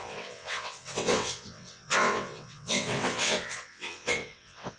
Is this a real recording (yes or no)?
no